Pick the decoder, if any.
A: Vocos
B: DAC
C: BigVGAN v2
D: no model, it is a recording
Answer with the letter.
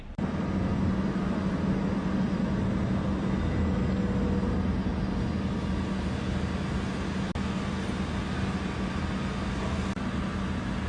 D